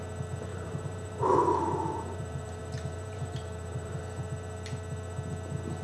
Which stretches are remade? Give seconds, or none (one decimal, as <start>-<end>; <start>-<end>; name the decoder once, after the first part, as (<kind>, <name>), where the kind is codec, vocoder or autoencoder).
0.5-4.0 (vocoder, BigVGAN v2)